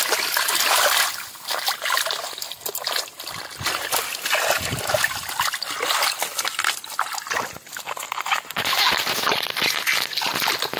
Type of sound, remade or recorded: recorded